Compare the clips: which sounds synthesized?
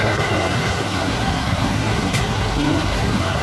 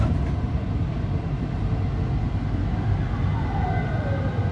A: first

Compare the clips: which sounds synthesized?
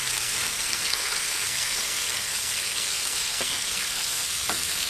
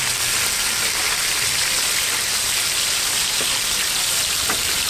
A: first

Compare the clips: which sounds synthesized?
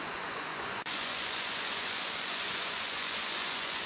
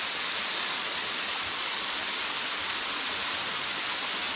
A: first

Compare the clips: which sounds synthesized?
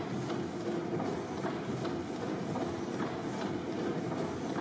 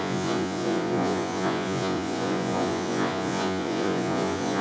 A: second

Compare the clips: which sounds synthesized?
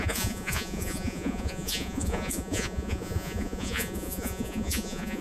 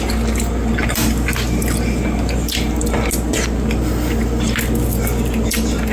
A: first